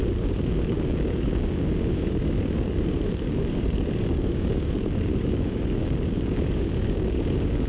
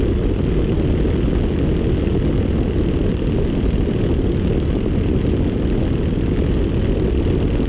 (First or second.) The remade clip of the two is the first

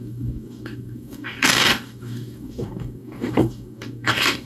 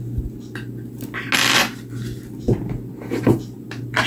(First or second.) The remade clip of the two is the first